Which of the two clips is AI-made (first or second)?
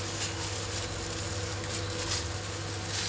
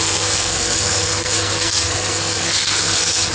second